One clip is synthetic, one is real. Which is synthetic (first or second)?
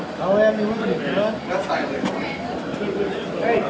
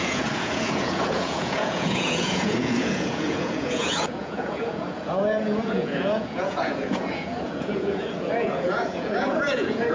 second